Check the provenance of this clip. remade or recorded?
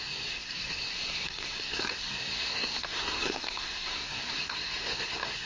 remade